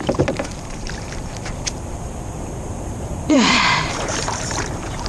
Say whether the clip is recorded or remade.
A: remade